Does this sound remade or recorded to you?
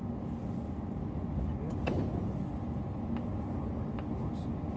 recorded